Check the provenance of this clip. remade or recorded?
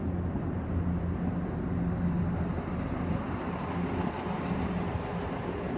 recorded